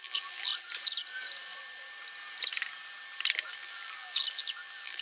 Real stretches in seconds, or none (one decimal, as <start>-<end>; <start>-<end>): 0.5-3.5